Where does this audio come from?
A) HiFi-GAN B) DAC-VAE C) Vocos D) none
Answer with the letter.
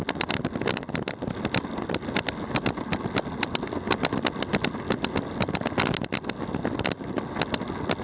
D